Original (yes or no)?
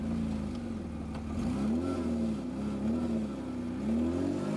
yes